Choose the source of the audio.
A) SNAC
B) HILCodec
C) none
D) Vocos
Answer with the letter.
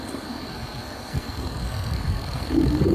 A